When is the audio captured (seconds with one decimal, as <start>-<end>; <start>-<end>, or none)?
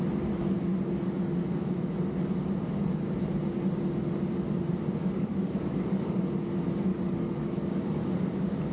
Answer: 0.0-5.0; 6.2-6.9; 8.1-8.7